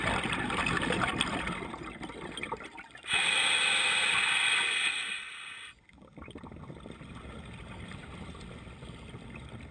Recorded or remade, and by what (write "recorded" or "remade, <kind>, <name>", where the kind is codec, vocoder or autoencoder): recorded